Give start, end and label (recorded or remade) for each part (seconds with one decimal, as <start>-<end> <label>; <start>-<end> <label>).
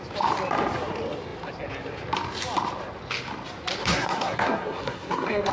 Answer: 0.0-3.8 recorded; 3.8-5.5 remade